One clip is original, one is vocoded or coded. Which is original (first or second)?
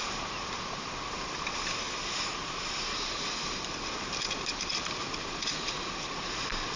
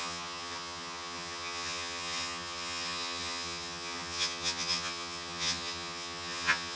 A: first